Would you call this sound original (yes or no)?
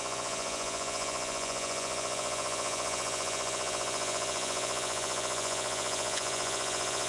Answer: no